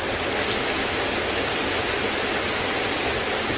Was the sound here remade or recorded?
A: recorded